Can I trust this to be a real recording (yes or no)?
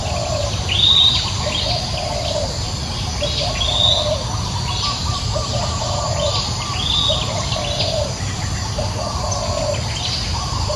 yes